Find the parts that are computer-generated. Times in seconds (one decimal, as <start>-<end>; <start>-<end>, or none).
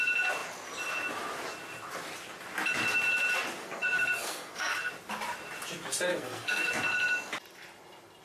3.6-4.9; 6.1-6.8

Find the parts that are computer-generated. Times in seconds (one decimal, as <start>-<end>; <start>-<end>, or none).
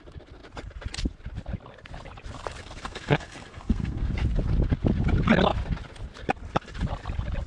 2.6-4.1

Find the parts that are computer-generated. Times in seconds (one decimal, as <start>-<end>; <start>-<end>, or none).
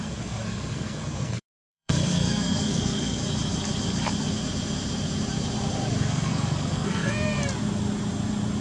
0.0-3.2; 6.0-7.4